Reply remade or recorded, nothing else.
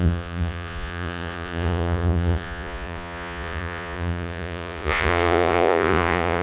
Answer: remade